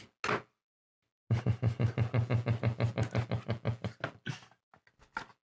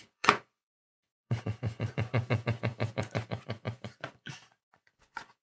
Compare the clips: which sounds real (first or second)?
first